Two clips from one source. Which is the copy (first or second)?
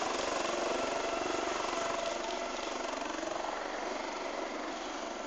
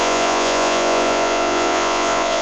second